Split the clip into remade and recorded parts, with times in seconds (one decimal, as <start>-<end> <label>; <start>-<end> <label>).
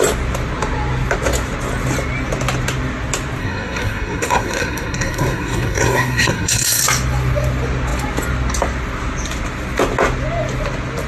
0.0-3.4 recorded; 3.4-6.8 remade; 6.8-11.1 recorded